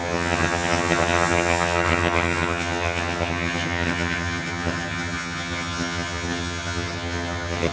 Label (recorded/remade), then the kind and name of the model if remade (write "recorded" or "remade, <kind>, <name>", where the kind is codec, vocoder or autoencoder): remade, vocoder, HiFi-GAN